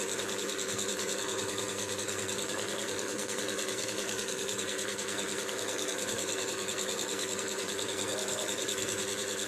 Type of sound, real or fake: fake